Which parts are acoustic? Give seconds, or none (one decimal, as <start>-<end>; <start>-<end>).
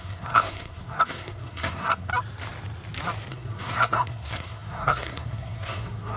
2.1-3.3